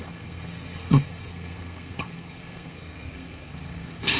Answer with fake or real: fake